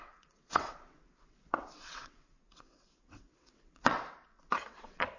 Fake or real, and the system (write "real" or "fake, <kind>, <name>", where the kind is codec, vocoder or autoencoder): fake, vocoder, WaveNeXt